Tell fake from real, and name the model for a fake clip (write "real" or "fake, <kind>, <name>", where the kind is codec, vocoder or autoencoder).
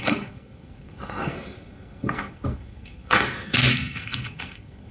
fake, codec, SNAC